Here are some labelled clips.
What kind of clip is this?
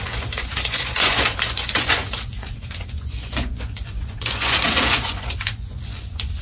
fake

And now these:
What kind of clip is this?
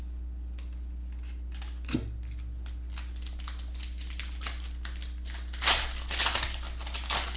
real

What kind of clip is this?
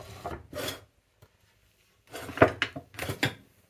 real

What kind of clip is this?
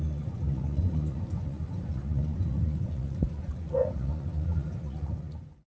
fake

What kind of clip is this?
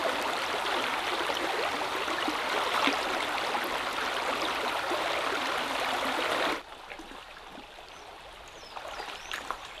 real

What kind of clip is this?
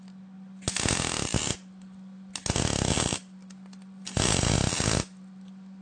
real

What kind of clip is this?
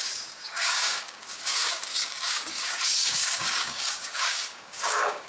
fake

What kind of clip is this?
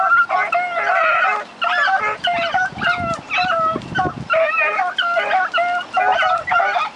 real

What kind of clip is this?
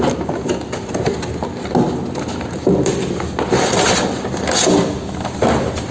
real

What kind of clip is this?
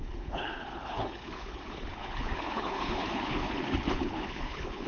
fake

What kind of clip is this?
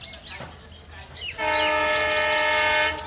real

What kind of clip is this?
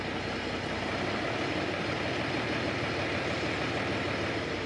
real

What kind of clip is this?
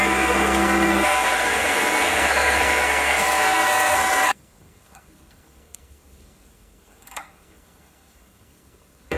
fake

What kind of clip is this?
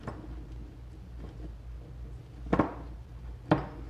real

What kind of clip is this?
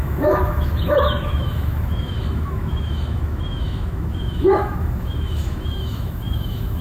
fake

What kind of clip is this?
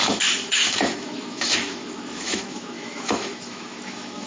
fake